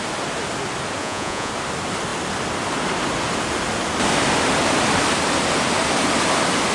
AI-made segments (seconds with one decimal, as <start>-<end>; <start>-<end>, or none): 1.0-1.5